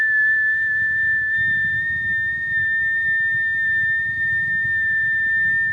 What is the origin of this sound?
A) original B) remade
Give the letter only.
A